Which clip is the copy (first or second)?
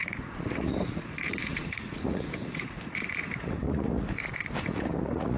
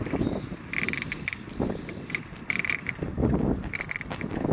first